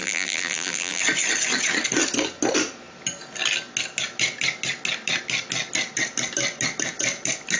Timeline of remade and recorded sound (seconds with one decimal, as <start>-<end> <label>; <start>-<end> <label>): 0.0-1.0 remade; 1.0-7.6 recorded